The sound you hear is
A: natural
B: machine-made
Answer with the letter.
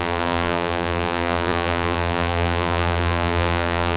B